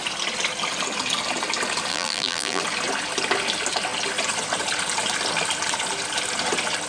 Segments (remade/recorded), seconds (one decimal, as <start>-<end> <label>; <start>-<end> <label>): 0.0-1.9 recorded; 1.9-2.6 remade; 2.6-6.9 recorded